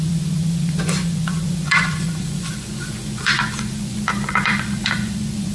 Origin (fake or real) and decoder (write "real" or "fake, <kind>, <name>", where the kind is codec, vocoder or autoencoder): fake, vocoder, Vocos